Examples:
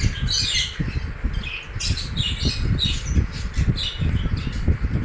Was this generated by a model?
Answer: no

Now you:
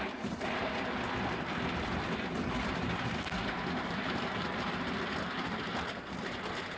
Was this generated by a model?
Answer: no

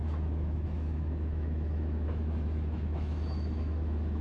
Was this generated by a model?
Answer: yes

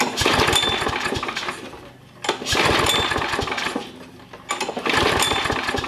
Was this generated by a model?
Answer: no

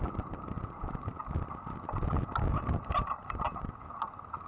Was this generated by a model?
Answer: no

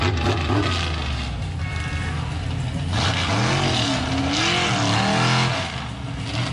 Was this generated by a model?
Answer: no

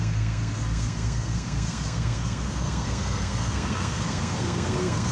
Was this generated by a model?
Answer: yes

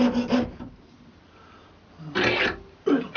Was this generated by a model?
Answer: no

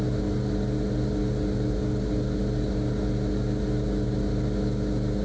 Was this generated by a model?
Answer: no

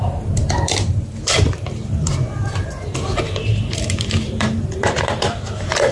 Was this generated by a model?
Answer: yes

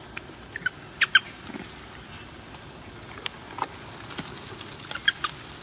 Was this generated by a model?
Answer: no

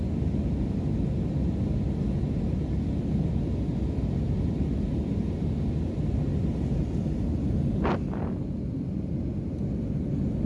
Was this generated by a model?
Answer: no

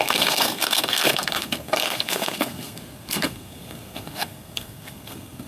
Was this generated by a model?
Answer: yes